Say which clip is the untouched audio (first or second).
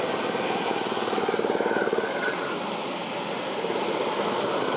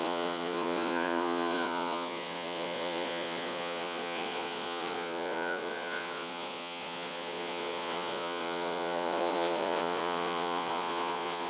first